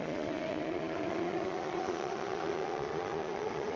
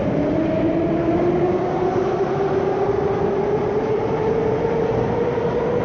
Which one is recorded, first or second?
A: second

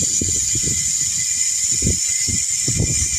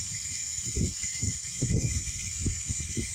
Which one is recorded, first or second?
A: first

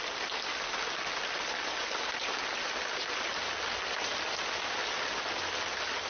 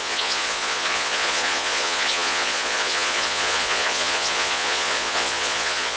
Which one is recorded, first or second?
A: first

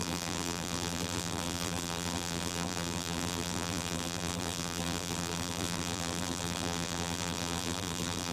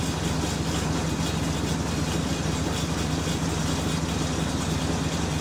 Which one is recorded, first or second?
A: second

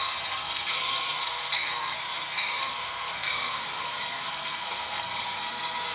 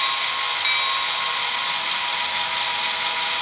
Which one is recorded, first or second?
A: second